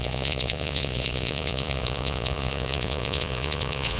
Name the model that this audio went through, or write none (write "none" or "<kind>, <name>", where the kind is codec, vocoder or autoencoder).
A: vocoder, Vocos